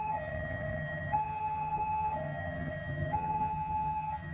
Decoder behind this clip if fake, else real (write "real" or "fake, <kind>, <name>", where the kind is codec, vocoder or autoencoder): fake, vocoder, HiFi-GAN